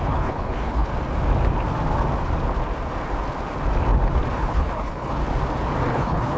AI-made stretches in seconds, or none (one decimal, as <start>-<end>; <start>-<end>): 0.0-0.9; 4.4-5.2; 5.9-6.4